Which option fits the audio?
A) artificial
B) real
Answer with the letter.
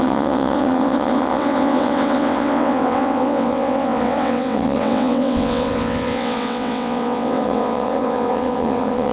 A